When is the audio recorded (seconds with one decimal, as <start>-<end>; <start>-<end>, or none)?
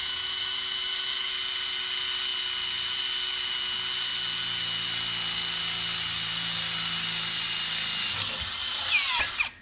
1.3-9.6